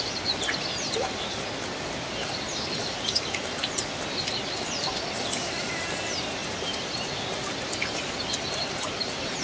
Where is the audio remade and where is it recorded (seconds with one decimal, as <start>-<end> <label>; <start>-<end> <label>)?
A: 0.0-9.4 recorded